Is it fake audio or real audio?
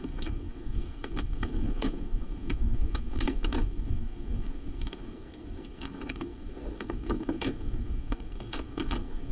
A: fake